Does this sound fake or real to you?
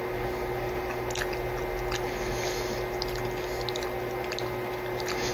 real